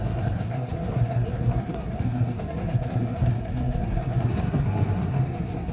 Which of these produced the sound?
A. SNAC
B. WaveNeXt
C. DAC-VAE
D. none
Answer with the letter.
A